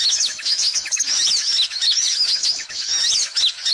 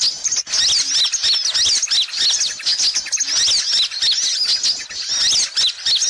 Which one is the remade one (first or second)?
first